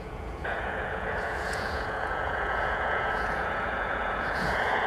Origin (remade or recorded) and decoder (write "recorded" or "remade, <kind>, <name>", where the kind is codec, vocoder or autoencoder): remade, vocoder, Vocos